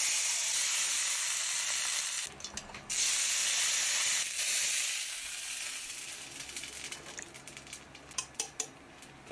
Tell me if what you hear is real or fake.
real